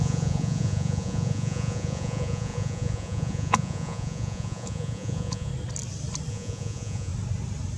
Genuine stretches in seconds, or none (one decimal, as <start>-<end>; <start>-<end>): 5.5-6.3; 7.1-7.8